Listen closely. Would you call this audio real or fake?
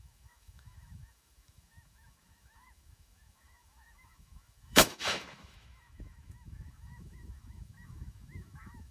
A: fake